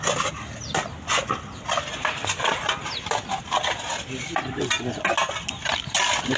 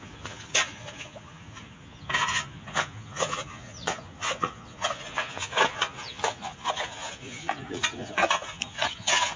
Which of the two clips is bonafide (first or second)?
first